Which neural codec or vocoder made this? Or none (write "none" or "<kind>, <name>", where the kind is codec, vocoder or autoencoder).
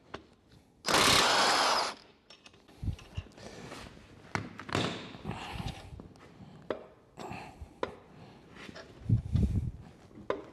none